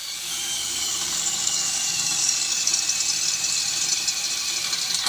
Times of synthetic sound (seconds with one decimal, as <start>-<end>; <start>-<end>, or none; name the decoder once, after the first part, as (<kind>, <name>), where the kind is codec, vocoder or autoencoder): 0.0-2.7 (codec, DAC)